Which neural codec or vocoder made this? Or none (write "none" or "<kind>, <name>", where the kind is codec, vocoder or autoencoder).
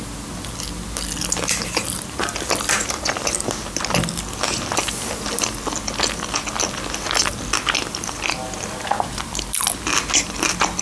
none